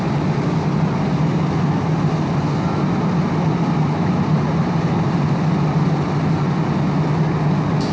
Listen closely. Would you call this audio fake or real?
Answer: real